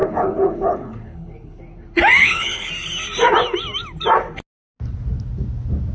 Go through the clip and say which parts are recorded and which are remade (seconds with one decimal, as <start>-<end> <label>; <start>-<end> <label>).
0.0-1.6 remade; 1.6-2.2 recorded; 2.2-2.7 remade; 2.7-5.9 recorded